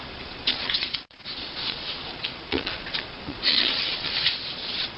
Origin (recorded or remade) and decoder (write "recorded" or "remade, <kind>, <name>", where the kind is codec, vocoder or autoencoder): remade, vocoder, Vocos